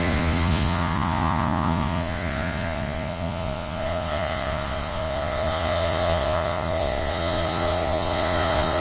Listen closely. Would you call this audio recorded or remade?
remade